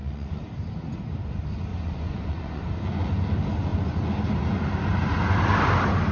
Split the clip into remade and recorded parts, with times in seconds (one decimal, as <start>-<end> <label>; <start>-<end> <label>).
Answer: 0.0-0.5 remade; 0.5-1.7 recorded; 1.7-2.6 remade; 2.6-6.1 recorded